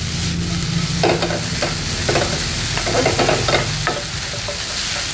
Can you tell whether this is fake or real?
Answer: real